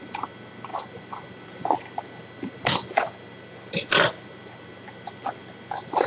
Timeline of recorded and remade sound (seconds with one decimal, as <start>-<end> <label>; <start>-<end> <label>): 0.0-6.1 recorded